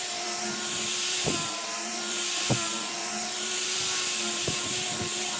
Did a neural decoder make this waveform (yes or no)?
yes